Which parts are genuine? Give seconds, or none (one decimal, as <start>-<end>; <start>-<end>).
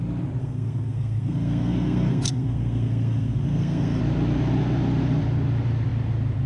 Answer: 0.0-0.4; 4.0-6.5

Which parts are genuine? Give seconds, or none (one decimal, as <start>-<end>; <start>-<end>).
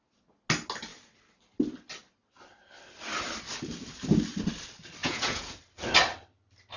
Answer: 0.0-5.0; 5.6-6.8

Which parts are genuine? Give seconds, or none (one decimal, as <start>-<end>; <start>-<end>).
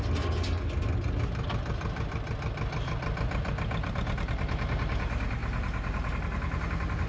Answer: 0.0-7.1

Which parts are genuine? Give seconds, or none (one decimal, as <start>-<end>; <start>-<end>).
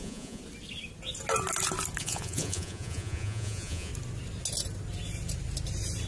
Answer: 0.4-2.0; 3.9-6.1